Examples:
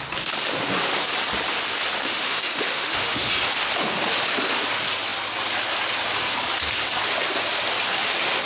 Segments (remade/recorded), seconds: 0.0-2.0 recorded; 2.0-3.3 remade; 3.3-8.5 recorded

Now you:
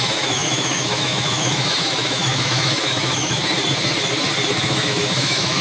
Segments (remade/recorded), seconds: 0.0-3.4 remade; 3.4-4.6 recorded; 4.6-5.6 remade